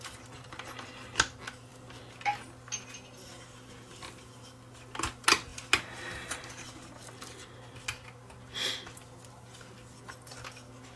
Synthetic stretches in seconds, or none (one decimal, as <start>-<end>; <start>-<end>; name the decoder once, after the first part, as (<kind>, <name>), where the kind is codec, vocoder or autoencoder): none